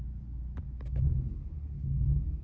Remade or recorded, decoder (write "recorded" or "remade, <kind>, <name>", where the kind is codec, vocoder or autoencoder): recorded